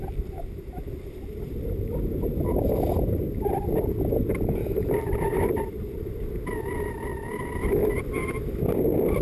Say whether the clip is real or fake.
fake